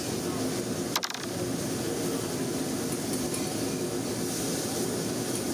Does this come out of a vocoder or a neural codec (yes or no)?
no